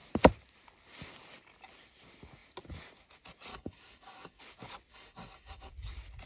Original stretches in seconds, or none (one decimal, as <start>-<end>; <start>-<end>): 0.0-3.5; 4.4-4.9; 5.7-6.3